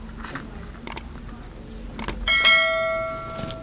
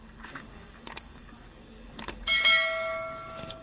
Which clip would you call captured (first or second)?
first